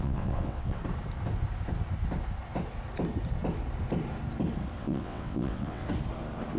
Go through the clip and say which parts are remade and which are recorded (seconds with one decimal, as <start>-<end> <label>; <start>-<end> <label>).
0.0-0.8 remade; 0.8-4.8 recorded; 4.8-5.8 remade; 5.8-6.6 recorded